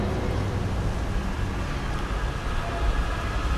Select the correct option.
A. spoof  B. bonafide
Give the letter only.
B